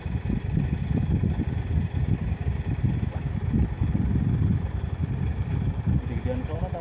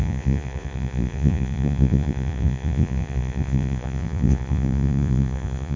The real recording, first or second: first